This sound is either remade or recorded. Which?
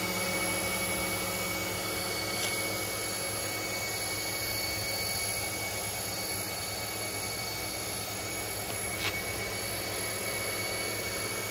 recorded